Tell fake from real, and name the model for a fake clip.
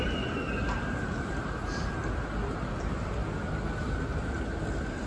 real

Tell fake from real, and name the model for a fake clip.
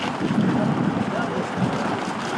real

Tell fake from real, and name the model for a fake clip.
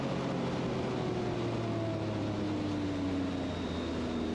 real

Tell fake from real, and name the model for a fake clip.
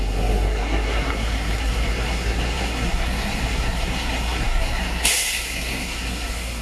fake, codec, SNAC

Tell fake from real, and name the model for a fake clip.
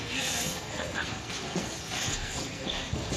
fake, codec, SNAC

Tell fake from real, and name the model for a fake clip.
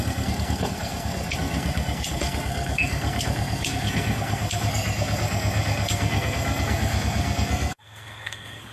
fake, codec, SNAC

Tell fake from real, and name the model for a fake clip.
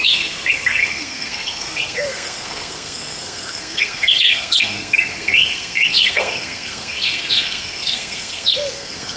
fake, codec, SNAC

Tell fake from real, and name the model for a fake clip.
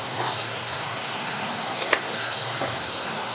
fake, codec, SNAC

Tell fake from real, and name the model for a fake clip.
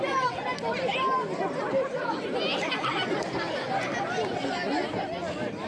real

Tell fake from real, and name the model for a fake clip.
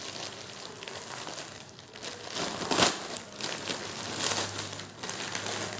real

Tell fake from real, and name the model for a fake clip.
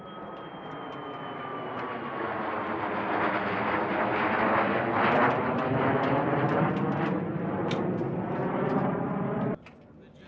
real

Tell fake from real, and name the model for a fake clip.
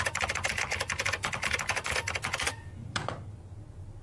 real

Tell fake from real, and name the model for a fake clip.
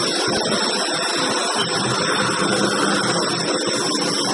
real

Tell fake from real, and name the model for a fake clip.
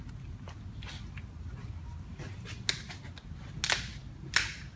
real